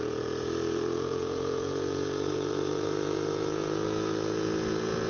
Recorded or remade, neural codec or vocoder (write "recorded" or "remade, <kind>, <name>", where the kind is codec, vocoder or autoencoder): remade, vocoder, Vocos